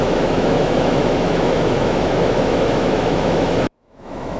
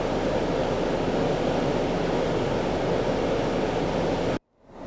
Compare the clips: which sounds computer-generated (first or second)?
first